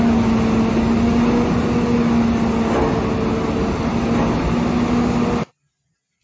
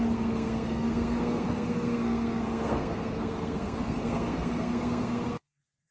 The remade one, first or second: second